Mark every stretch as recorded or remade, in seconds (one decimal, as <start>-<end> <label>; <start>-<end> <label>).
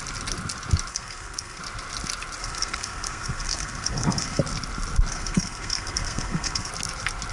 0.0-0.9 recorded; 0.9-1.6 remade; 1.6-2.4 recorded; 2.4-4.4 remade; 4.4-5.1 recorded; 5.1-6.7 remade; 6.7-7.3 recorded